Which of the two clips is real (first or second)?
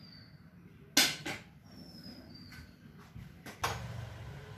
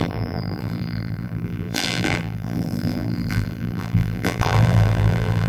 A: first